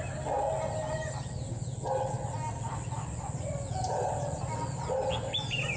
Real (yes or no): yes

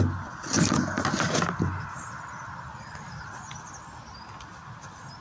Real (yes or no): yes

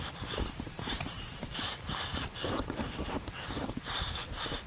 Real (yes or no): yes